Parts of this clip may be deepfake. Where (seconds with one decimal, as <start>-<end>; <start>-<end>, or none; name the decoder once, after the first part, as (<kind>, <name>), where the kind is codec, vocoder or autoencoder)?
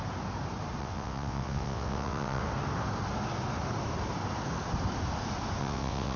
0.8-2.4 (vocoder, WaveNeXt); 5.6-6.2